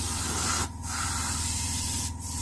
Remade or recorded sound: recorded